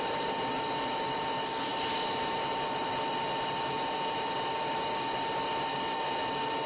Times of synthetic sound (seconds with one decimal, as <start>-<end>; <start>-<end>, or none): none